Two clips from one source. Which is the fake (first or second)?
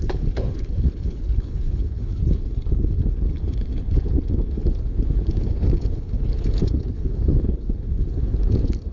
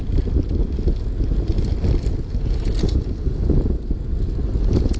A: first